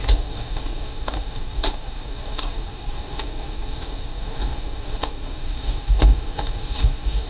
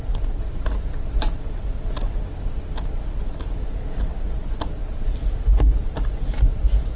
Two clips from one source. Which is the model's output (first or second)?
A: first